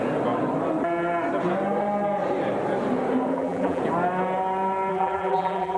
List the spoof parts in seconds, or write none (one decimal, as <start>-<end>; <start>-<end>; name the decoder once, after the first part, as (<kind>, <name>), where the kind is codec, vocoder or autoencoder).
3.3-3.8 (vocoder, BigVGAN v2); 4.9-5.8